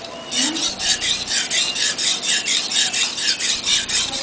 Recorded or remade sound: recorded